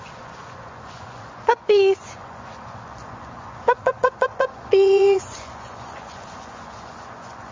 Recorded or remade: remade